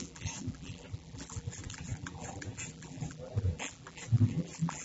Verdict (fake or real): fake